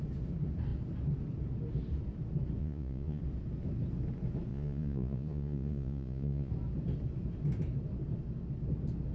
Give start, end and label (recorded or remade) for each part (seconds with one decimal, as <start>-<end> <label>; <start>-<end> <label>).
0.0-2.6 recorded; 2.6-3.2 remade; 3.2-4.5 recorded; 4.5-6.5 remade; 6.5-9.1 recorded